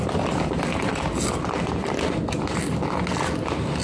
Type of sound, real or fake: real